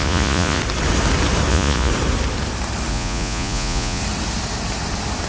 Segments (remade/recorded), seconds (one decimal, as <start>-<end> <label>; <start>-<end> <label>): 0.0-0.6 remade; 0.6-1.5 recorded; 1.5-1.9 remade; 1.9-2.9 recorded; 2.9-4.0 remade; 4.0-5.3 recorded